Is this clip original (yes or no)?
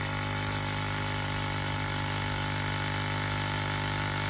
yes